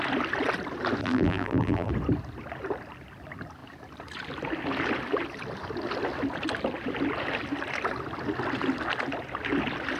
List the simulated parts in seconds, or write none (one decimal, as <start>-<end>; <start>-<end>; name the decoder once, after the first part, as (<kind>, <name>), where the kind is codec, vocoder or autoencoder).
1.0-1.9 (vocoder, BigVGAN v2)